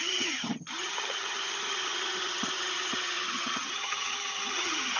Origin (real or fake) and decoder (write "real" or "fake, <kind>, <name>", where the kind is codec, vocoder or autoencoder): fake, vocoder, HiFi-GAN